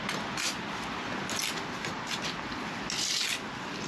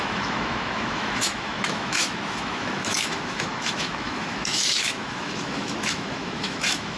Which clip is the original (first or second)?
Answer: first